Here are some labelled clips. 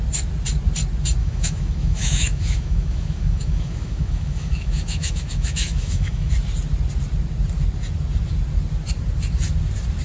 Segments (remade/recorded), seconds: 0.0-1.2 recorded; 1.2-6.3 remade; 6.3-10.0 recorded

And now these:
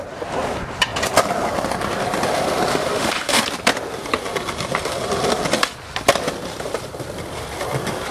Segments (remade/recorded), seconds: 0.0-2.7 recorded; 2.7-3.4 remade; 3.4-8.1 recorded

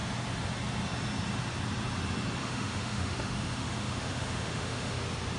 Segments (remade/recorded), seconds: 0.0-2.4 recorded; 2.4-5.0 remade; 5.0-5.4 recorded

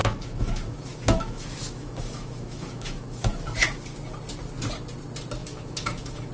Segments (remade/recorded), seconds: 0.0-3.3 remade; 3.3-5.4 recorded; 5.4-6.3 remade